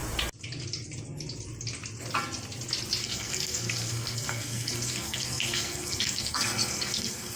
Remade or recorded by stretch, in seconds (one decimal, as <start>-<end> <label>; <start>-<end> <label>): 0.0-3.0 recorded; 3.0-7.4 remade